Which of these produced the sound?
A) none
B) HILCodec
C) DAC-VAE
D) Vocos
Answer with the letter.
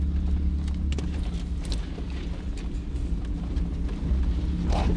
A